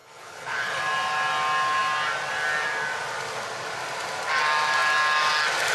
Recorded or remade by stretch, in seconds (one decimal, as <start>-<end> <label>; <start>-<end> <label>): 0.0-0.8 remade; 0.8-5.7 recorded